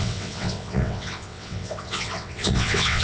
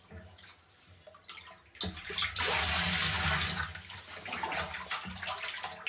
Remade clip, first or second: first